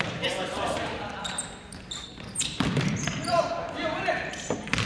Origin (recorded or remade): remade